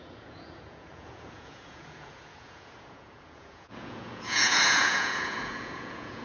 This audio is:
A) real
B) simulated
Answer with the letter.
B